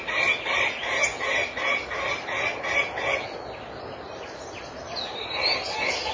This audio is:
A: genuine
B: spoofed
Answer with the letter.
A